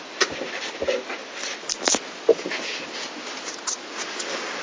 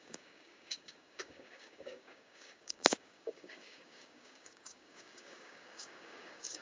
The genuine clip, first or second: first